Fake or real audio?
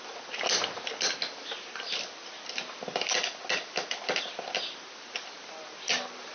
real